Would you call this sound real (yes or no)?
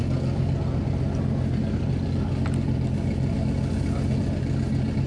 yes